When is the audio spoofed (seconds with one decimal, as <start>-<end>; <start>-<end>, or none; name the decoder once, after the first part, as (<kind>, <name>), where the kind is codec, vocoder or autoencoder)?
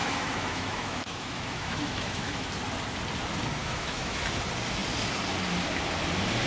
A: 0.0-2.5 (autoencoder, DAC-VAE); 3.6-4.2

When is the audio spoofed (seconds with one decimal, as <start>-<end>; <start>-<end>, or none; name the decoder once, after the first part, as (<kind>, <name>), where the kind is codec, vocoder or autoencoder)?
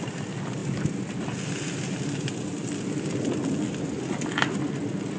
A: none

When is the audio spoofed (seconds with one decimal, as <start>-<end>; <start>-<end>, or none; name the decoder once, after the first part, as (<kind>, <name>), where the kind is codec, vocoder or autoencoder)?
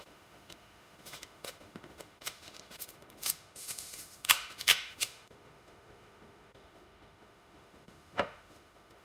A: 0.0-9.0 (autoencoder, DAC-VAE)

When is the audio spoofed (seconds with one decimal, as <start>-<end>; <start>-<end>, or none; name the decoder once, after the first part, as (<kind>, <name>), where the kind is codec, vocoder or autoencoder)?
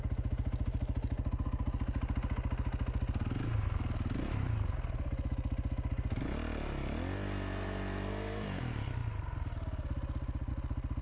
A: none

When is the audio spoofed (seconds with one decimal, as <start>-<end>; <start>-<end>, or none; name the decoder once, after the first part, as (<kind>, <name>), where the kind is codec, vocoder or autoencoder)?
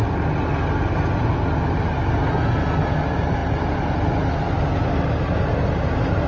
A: none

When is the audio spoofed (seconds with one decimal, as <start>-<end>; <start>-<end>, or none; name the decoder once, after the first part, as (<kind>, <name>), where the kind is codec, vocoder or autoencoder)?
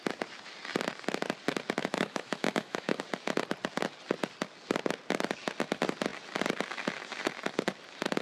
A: 1.8-3.0 (autoencoder, DAC-VAE)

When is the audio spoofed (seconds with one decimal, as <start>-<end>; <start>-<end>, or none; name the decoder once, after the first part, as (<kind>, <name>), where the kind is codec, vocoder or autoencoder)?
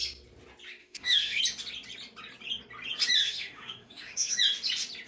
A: 0.8-1.4 (autoencoder, DAC-VAE); 3.2-4.4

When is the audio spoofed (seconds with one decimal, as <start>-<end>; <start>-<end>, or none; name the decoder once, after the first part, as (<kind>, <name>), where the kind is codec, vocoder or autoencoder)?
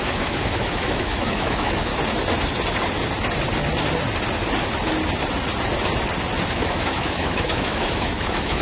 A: 0.0-1.9 (autoencoder, DAC-VAE); 6.5-8.6